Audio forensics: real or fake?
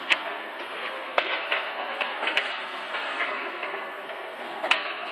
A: fake